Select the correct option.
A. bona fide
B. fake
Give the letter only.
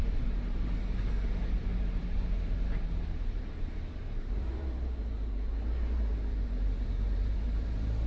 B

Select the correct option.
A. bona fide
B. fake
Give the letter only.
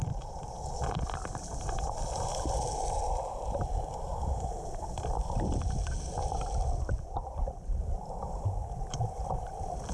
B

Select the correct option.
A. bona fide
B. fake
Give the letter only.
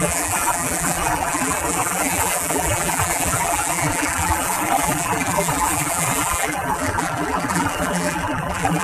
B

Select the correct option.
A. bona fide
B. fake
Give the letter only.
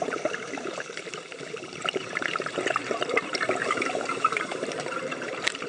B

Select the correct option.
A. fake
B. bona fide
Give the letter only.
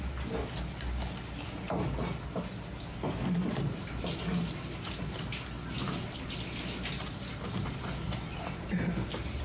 B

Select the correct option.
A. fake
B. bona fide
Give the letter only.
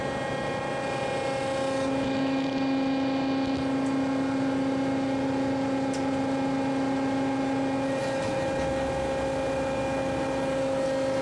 B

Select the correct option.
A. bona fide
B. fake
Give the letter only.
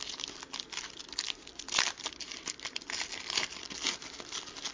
A